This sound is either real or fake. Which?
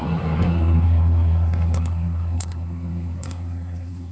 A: fake